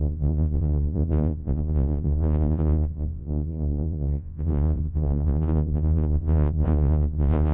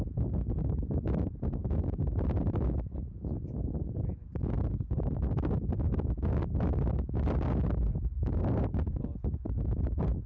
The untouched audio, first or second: second